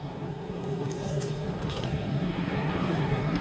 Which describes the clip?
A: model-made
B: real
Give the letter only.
A